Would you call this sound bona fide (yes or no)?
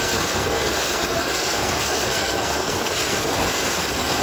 no